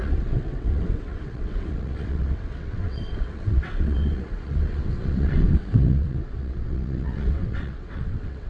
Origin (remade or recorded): remade